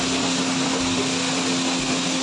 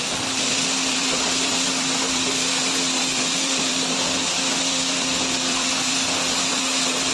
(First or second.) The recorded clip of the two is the first